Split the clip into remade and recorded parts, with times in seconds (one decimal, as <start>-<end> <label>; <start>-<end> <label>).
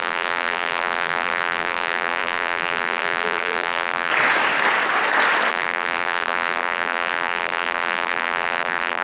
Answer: 0.0-4.1 remade; 4.1-5.5 recorded; 5.5-9.0 remade